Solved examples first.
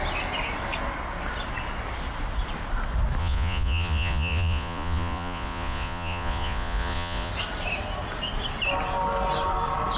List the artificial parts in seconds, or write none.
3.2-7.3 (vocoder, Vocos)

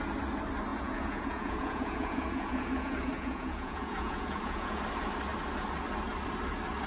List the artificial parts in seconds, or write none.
0.7-4.8 (vocoder, Vocos)

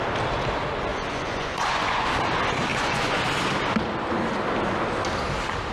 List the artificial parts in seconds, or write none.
0.9-2.1 (vocoder, Vocos); 2.7-3.2

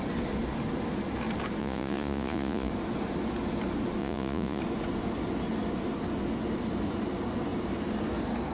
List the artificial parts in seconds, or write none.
1.6-2.7 (vocoder, Vocos); 4.0-4.6

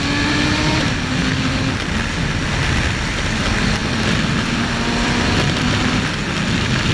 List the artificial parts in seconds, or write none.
none

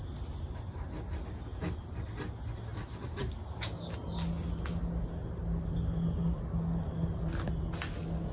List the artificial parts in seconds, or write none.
none

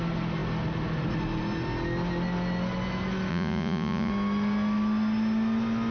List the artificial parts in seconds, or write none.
3.3-4.1 (vocoder, Vocos)

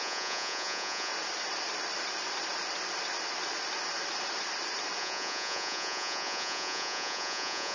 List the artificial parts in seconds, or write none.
0.0-1.1 (vocoder, Vocos); 5.0-7.7